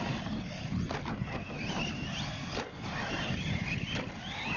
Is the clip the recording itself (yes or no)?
yes